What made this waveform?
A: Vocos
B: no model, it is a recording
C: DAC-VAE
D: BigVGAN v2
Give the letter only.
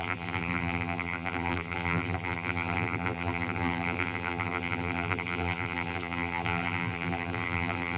D